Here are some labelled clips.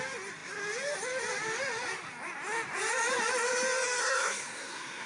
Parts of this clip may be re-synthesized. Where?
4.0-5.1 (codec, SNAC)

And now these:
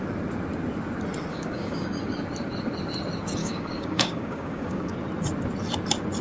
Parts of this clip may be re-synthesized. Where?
1.3-2.0 (codec, DAC); 3.4-4.9

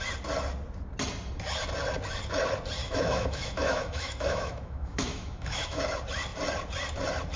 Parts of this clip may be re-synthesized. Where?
2.8-5.8 (autoencoder, DAC-VAE)

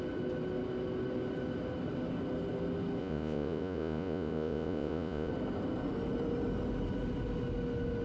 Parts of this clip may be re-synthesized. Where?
3.0-5.3 (vocoder, Vocos)

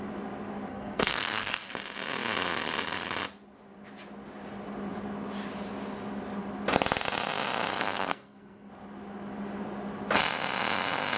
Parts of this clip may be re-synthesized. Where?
0.7-1.7 (codec, SNAC); 7.7-8.7